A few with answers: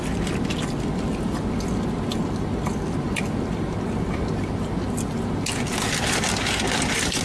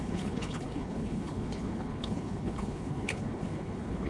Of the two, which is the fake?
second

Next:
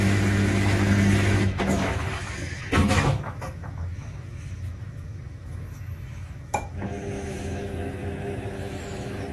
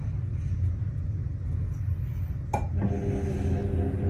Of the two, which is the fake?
first